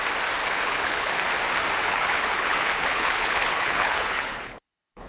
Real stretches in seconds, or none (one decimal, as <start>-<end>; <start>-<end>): 0.0-0.4; 1.1-1.8